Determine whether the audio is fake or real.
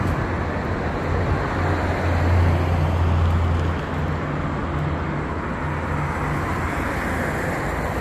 real